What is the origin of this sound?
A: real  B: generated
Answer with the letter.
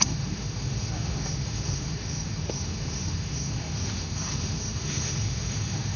B